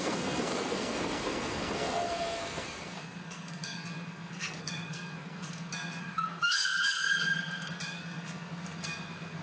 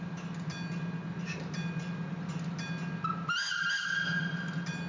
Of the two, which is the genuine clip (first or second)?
second